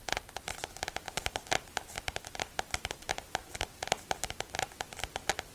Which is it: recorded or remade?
recorded